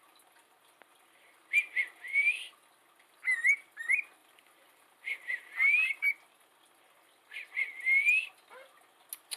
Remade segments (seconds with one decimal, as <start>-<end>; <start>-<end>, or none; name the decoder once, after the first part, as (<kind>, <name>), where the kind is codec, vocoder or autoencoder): 4.2-6.1 (vocoder, BigVGAN v2)